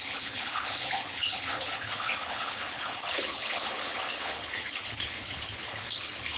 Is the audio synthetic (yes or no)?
yes